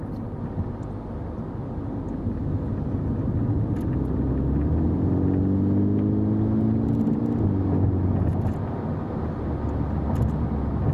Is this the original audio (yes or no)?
yes